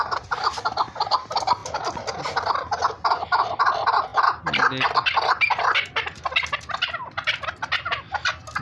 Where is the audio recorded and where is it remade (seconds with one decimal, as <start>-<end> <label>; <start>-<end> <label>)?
0.0-8.6 recorded